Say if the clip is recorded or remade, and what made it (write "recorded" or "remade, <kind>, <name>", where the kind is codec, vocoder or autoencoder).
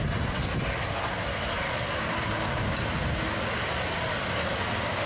recorded